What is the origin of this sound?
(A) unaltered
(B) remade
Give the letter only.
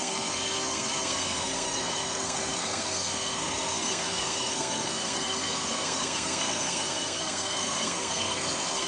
B